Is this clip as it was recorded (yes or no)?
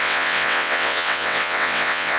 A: no